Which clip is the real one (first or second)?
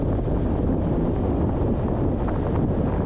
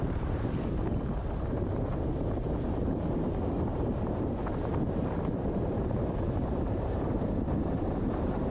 first